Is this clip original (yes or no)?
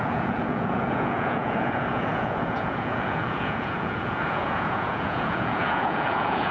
no